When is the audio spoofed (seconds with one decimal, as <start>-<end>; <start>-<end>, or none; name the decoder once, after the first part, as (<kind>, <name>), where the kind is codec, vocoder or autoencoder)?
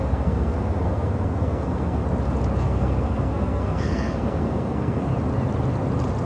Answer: 0.0-2.0 (codec, SNAC); 2.6-5.1